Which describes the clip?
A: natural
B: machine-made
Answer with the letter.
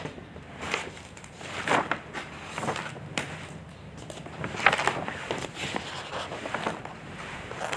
B